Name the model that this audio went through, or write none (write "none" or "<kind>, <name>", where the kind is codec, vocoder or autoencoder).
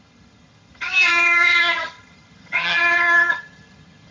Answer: vocoder, HiFi-GAN